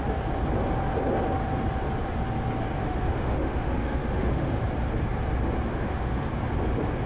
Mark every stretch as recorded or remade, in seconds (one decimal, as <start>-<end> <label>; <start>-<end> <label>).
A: 0.0-2.8 recorded; 2.8-4.6 remade; 4.6-5.7 recorded; 5.7-6.3 remade; 6.3-7.1 recorded